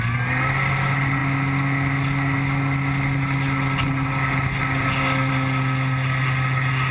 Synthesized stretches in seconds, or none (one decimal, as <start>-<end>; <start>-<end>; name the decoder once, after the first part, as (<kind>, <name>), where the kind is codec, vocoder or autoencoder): none